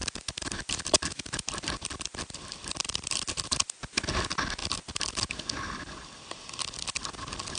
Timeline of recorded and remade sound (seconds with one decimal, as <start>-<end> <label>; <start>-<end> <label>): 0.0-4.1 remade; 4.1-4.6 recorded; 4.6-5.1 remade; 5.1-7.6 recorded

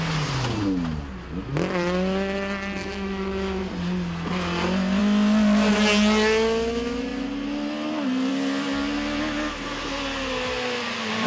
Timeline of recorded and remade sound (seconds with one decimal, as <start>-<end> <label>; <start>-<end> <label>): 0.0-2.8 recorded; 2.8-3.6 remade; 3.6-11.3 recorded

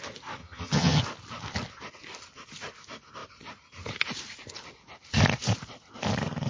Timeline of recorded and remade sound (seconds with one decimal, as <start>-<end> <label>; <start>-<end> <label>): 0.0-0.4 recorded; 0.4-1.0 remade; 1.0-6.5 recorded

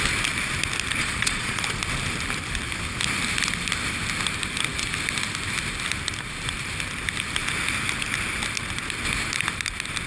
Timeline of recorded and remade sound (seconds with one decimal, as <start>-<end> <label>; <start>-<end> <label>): 0.0-1.0 recorded; 1.0-1.6 remade; 1.6-10.1 recorded

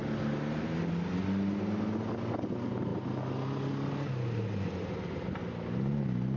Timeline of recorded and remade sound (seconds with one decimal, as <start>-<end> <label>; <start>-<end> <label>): 0.0-6.4 recorded

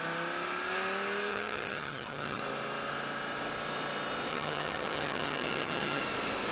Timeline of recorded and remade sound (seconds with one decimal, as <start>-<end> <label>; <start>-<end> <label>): 0.0-1.3 recorded; 1.3-2.4 remade; 2.4-4.3 recorded; 4.3-6.0 remade; 6.0-6.5 recorded

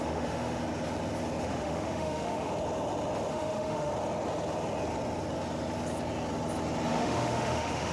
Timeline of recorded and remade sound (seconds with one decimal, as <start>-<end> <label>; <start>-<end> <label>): 0.0-0.6 remade; 0.6-1.4 recorded; 1.4-2.5 remade; 2.5-3.3 recorded; 3.3-3.9 remade; 3.9-6.9 recorded; 6.9-7.9 remade

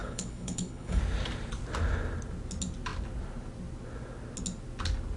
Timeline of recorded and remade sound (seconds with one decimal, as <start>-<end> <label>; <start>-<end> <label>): 0.0-1.0 remade; 1.0-5.2 recorded